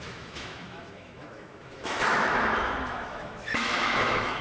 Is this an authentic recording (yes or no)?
no